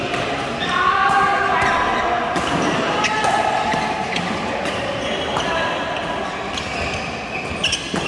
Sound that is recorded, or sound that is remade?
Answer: recorded